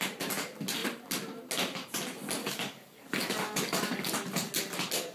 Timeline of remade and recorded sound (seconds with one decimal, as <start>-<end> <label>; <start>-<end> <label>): 0.0-2.4 recorded; 2.4-4.1 remade; 4.1-5.1 recorded